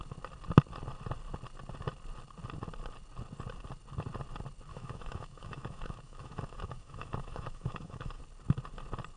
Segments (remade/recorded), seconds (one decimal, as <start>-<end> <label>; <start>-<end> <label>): 0.0-4.7 recorded; 4.7-8.2 remade; 8.2-9.2 recorded